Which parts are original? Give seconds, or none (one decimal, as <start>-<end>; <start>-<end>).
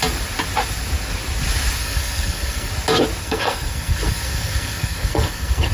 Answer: 0.0-1.8; 2.7-3.2